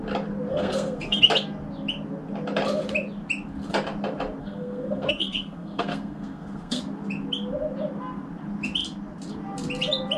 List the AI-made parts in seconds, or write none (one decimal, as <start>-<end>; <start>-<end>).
0.5-1.2; 4.4-6.8